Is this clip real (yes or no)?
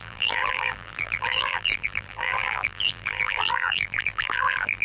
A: no